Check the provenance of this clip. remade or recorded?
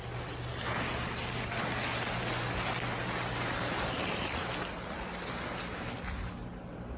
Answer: recorded